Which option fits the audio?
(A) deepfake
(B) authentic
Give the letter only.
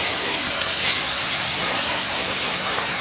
A